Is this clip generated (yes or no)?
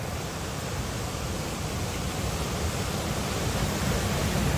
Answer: yes